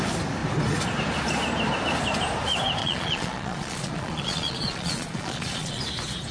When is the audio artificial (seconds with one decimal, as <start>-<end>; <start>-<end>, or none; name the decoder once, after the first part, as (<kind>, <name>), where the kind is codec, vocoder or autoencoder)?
2.8-5.8 (vocoder, Vocos)